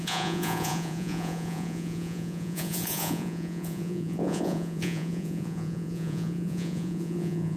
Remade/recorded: remade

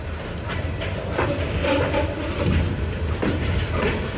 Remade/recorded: recorded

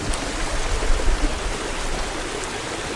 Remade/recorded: recorded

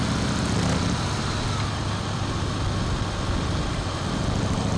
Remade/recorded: recorded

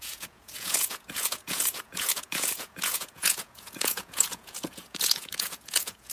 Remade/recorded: remade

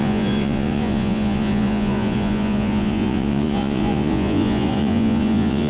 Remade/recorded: remade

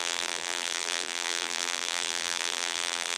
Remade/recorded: remade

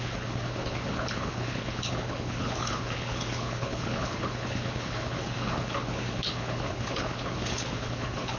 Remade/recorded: remade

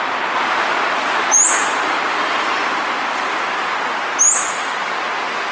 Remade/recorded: recorded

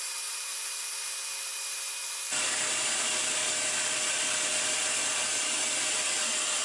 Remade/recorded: remade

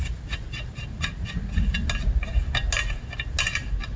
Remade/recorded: recorded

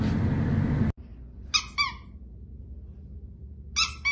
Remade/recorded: recorded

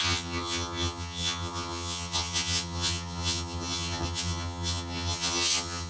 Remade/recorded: remade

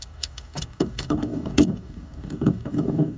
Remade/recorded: remade